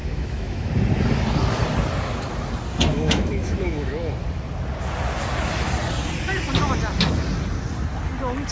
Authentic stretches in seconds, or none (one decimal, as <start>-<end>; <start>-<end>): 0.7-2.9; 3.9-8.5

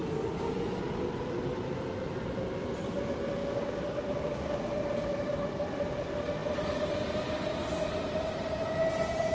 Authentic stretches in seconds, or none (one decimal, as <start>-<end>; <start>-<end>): 0.0-3.4; 4.6-9.3

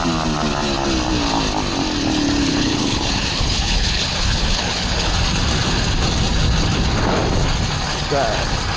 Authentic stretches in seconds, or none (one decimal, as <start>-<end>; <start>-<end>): 0.0-2.4; 5.1-8.8

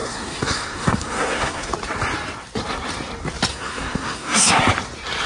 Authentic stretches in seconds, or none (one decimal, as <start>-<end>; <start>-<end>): 1.7-3.5; 4.6-5.3

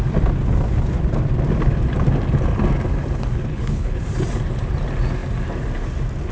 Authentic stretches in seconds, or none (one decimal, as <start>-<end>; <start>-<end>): 0.0-3.5; 4.0-6.3

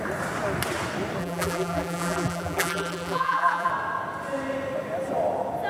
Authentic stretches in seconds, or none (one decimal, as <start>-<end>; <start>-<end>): 0.0-1.2; 3.7-5.7

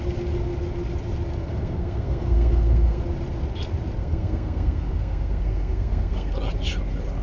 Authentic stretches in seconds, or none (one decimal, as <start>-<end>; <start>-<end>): 0.0-1.4; 3.0-4.0; 6.3-7.2

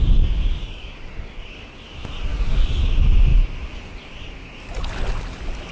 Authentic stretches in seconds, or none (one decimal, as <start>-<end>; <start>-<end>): 0.0-0.6; 1.7-2.3; 2.8-5.7